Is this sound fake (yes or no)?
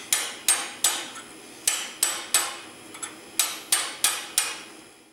no